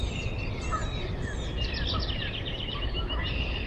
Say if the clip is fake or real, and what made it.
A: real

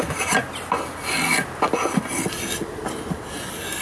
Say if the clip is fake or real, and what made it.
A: real